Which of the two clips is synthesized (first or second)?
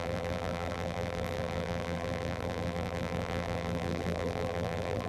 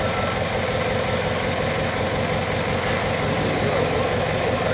first